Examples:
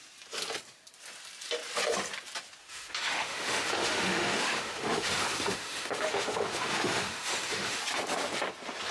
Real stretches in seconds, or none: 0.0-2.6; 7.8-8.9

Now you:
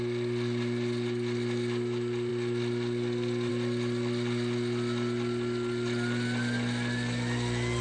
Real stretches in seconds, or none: 0.0-7.8

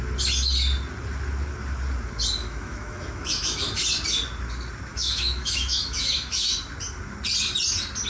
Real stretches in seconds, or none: 0.0-2.4; 3.8-4.9; 6.5-8.1